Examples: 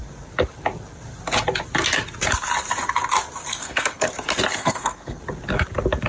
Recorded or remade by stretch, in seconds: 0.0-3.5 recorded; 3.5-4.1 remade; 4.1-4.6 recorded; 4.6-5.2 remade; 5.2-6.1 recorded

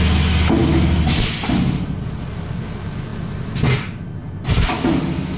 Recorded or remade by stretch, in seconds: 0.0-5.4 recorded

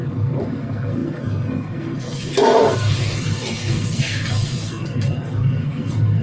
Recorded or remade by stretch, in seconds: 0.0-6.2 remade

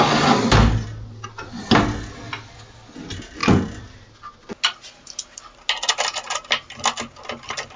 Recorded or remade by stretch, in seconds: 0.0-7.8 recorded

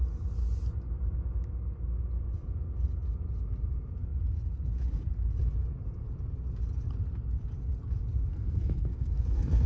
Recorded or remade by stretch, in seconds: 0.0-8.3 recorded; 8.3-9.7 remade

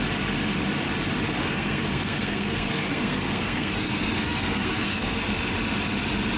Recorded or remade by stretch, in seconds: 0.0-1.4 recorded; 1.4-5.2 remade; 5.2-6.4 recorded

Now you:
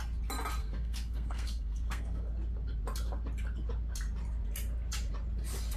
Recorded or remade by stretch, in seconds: 0.0-0.6 recorded; 0.6-2.3 remade; 2.3-5.8 recorded